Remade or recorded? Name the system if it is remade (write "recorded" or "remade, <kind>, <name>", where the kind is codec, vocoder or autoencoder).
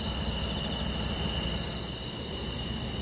recorded